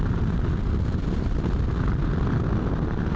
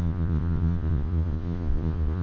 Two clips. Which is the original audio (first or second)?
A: first